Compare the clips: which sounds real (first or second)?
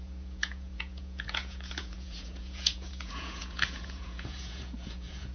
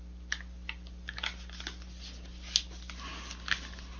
second